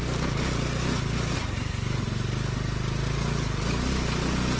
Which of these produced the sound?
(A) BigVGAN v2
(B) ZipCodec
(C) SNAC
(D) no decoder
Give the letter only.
D